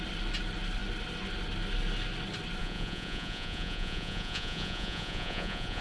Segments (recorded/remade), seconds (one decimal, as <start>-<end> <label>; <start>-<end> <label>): 0.0-2.6 recorded; 2.6-5.8 remade

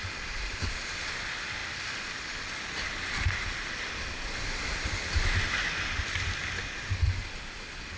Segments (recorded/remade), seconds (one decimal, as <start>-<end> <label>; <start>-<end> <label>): 0.0-8.0 recorded

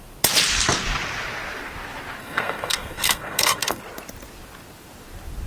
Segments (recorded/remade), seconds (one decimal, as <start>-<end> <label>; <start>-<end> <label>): 0.0-2.2 recorded; 2.2-3.8 remade; 3.8-5.5 recorded